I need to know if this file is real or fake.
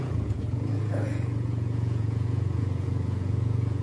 fake